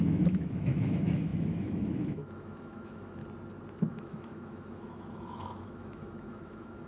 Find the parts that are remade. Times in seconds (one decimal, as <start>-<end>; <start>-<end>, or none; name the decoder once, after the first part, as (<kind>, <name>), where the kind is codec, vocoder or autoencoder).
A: 0.0-3.2 (autoencoder, DAC-VAE); 3.7-6.9